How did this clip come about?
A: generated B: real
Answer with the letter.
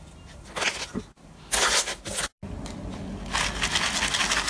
B